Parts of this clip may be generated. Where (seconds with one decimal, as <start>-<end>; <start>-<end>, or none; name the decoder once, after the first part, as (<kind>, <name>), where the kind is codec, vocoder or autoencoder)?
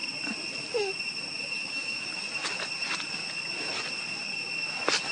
1.6-2.1 (autoencoder, DAC-VAE)